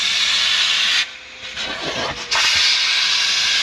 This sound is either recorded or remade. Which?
recorded